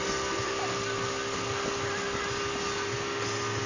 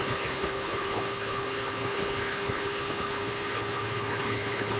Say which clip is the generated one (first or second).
second